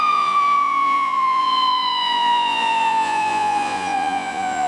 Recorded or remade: remade